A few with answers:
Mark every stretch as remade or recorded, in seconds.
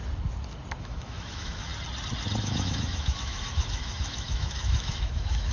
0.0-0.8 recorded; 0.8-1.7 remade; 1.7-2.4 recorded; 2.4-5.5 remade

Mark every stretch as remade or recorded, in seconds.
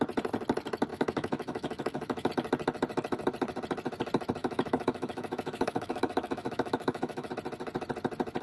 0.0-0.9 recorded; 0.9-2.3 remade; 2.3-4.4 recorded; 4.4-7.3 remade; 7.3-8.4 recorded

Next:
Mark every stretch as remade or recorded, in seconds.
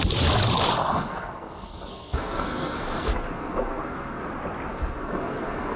0.0-0.8 recorded; 0.8-4.3 remade; 4.3-4.7 recorded; 4.7-5.8 remade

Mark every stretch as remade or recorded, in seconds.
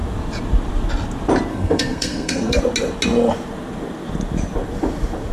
0.0-1.5 recorded; 1.5-2.6 remade; 2.6-5.3 recorded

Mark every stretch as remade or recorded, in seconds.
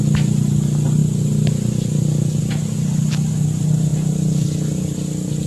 0.0-5.5 recorded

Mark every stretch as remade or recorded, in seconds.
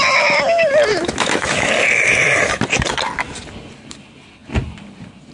0.0-0.9 recorded; 0.9-1.7 remade; 1.7-5.3 recorded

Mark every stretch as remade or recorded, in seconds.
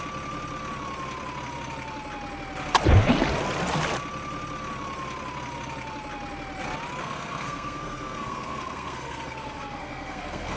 0.0-7.0 recorded; 7.0-10.6 remade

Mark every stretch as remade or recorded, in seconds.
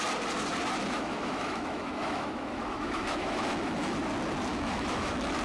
0.0-0.8 recorded; 0.8-4.0 remade; 4.0-4.5 recorded; 4.5-5.4 remade